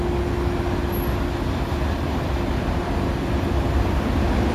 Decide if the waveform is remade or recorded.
recorded